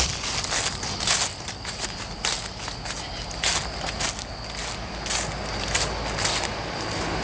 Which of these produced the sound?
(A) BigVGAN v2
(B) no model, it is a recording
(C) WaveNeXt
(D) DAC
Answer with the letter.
B